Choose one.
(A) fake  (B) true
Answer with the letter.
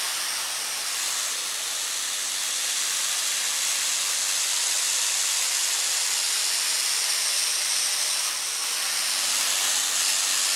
B